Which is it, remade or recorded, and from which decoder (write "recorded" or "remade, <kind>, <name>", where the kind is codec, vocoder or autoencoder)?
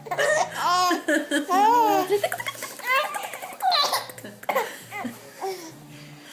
recorded